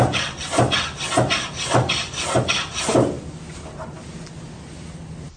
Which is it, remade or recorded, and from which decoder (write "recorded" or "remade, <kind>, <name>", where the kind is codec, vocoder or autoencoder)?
recorded